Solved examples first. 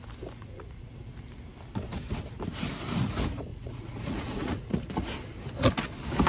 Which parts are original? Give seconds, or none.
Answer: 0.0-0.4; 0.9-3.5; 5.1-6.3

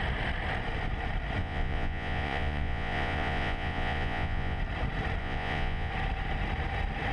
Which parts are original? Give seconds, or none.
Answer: 0.0-1.4; 4.6-5.2; 5.9-7.1

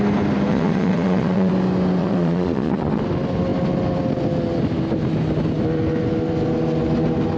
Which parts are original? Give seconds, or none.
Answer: 0.0-0.5; 1.5-2.0; 3.0-7.4

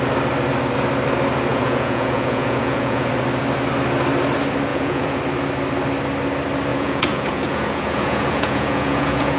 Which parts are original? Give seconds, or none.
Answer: 0.0-1.5; 3.1-4.7; 5.2-6.7